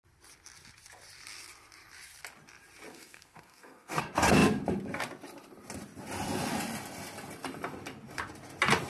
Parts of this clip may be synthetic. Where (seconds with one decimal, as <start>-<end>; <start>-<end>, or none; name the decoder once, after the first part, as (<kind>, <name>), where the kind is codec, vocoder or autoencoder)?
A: 2.9-4.0 (codec, SNAC)